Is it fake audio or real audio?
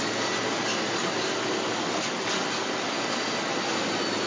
real